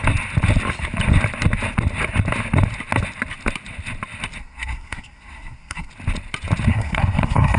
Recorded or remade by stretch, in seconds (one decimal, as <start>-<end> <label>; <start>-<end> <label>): 0.0-4.4 recorded; 4.4-5.9 remade; 5.9-6.7 recorded; 6.7-7.6 remade